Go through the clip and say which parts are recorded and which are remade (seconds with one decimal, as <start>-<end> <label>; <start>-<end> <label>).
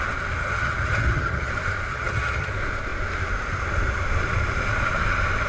0.0-0.4 recorded; 0.4-1.5 remade; 1.5-1.9 recorded; 1.9-2.5 remade; 2.5-5.5 recorded